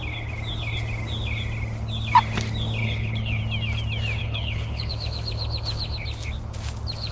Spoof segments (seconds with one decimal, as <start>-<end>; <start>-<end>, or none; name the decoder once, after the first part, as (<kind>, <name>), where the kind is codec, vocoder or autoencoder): 2.8-3.4 (codec, HILCodec); 4.2-4.9